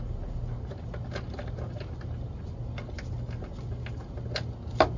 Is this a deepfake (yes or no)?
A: no